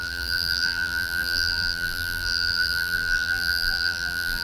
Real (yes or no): no